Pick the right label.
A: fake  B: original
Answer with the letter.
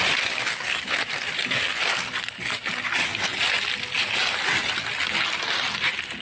B